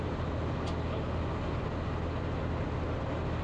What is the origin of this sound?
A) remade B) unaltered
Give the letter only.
B